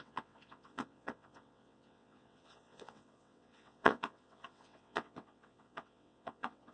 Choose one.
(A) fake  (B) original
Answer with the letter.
A